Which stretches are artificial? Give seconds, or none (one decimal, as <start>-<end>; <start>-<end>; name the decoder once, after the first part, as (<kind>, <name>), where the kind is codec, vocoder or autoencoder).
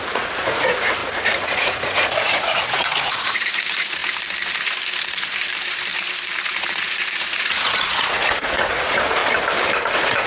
0.0-4.0 (vocoder, Vocos); 6.5-9.2; 9.9-10.3